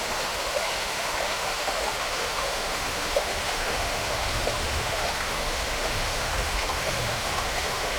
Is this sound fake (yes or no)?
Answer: yes